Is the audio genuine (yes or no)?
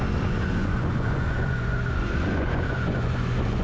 no